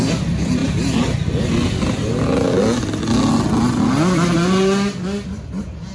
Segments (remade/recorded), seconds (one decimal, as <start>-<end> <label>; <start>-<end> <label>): 0.0-5.9 recorded